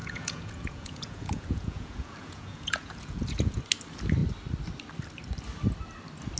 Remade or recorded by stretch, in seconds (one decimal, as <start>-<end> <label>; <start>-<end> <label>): 0.0-3.6 remade; 3.6-6.4 recorded